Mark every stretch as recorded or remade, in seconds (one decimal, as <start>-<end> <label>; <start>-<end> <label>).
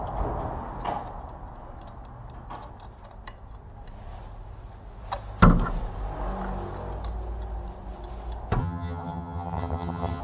0.0-8.6 recorded; 8.6-10.2 remade